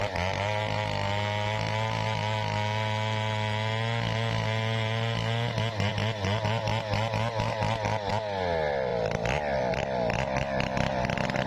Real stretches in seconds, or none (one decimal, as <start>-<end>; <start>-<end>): 0.0-11.5